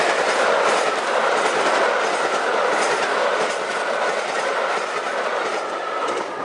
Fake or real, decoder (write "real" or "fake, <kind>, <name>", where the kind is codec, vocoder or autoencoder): fake, vocoder, BigVGAN v2